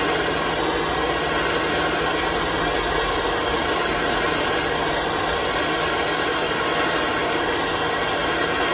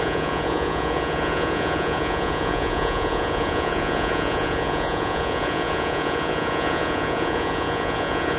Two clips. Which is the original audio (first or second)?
first